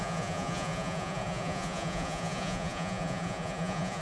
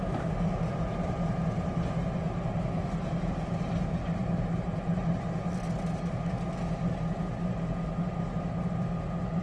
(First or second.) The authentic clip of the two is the second